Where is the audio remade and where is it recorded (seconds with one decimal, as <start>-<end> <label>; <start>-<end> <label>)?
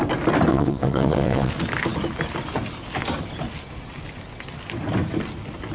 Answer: 0.0-0.5 recorded; 0.5-1.5 remade; 1.5-5.7 recorded